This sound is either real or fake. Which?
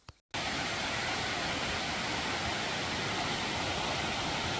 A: real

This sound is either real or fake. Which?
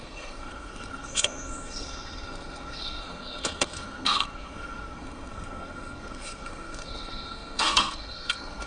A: fake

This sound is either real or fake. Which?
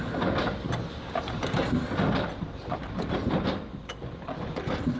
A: real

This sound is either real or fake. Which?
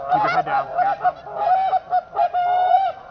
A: real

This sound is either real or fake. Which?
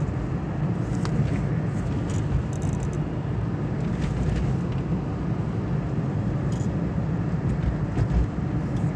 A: real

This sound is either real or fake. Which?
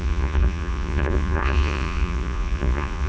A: fake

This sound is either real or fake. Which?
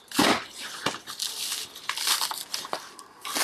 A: fake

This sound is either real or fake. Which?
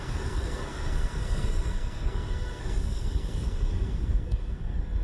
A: fake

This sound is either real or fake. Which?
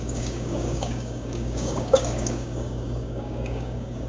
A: fake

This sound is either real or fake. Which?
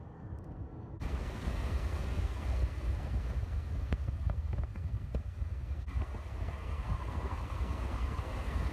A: fake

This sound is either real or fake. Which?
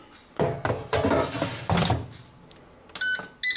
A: real